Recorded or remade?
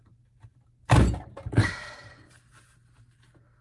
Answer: recorded